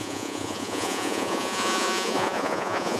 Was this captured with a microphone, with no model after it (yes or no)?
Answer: no